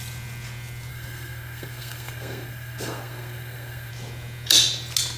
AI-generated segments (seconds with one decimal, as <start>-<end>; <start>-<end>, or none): 0.9-3.9